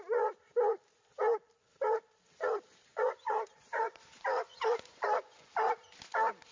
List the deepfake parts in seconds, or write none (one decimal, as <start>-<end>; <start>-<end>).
2.9-3.8; 4.5-5.5